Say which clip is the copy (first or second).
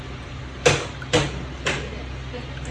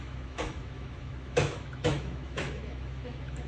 second